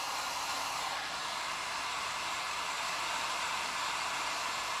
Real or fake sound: fake